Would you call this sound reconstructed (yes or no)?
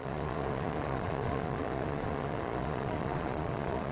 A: yes